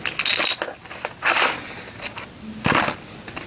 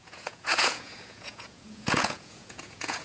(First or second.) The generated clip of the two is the second